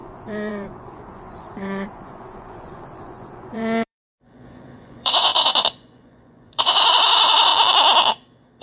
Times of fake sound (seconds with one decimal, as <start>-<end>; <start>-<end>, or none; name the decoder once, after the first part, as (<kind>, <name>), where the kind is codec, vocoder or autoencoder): 0.0-7.5 (vocoder, Vocos)